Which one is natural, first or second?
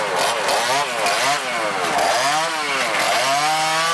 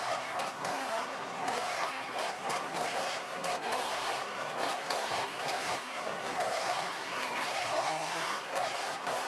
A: first